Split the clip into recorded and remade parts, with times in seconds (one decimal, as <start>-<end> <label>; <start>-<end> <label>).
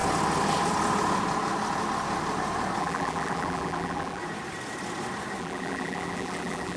0.0-2.8 recorded; 2.8-4.2 remade; 4.2-5.4 recorded; 5.4-6.8 remade